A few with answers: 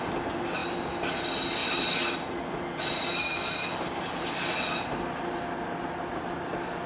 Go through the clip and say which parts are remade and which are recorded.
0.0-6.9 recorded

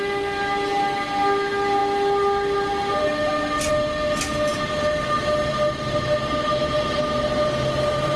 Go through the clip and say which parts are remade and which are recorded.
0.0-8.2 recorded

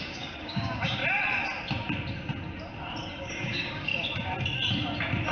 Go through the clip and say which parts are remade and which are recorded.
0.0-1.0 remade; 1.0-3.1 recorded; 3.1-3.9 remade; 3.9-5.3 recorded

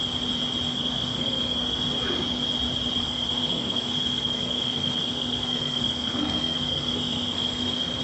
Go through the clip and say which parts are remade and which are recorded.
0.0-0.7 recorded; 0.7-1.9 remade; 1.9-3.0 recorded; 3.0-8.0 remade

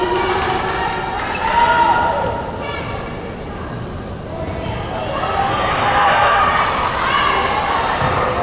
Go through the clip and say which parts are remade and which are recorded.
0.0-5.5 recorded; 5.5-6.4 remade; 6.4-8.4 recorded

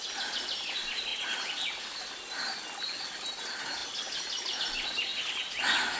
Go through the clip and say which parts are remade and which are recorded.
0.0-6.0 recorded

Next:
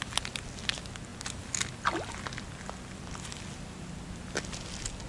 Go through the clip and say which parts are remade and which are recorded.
0.0-5.1 recorded